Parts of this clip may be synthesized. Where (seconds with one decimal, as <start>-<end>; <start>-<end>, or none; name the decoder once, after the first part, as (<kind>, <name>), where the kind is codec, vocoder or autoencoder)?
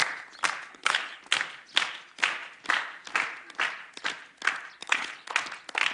0.7-1.2 (codec, HILCodec); 4.8-5.3